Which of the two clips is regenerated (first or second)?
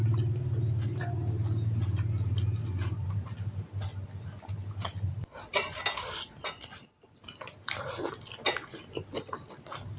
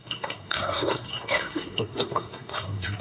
second